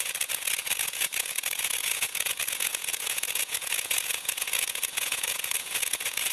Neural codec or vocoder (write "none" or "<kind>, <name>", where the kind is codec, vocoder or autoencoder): vocoder, Vocos